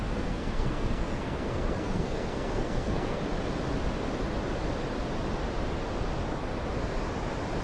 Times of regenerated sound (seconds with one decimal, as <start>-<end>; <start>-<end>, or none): 0.0-3.2